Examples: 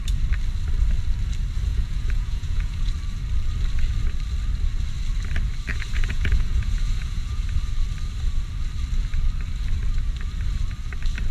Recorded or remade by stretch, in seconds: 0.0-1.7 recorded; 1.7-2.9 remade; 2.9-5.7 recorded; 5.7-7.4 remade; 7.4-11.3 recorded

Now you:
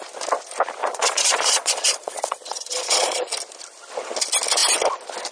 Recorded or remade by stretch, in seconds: 0.0-0.8 recorded; 0.8-3.2 remade; 3.2-5.3 recorded

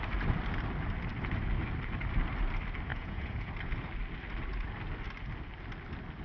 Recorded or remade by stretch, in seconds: 0.0-2.9 recorded; 2.9-3.5 remade; 3.5-6.2 recorded

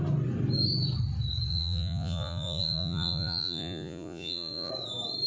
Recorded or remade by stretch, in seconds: 0.0-1.5 recorded; 1.5-4.7 remade; 4.7-5.3 recorded

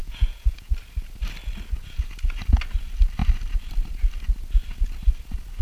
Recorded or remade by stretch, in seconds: 0.0-0.7 remade; 0.7-5.6 recorded

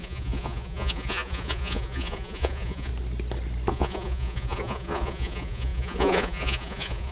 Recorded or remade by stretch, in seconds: 0.0-2.9 remade; 2.9-3.7 recorded; 3.7-7.1 remade

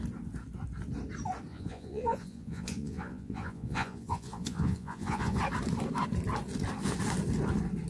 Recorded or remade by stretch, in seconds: 0.0-1.5 recorded; 1.5-5.4 remade; 5.4-7.9 recorded

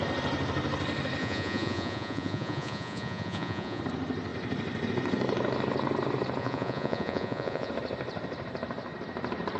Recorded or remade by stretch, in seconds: 0.0-1.2 recorded; 1.2-3.8 remade; 3.8-6.4 recorded; 6.4-7.7 remade; 7.7-9.6 recorded